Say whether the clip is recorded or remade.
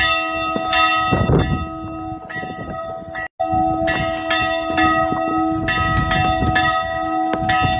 recorded